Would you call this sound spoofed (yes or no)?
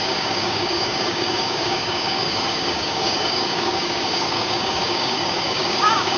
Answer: yes